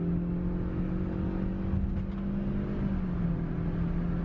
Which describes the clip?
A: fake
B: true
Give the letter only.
B